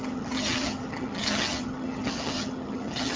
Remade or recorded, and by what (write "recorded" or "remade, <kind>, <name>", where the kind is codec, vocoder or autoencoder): remade, vocoder, HiFi-GAN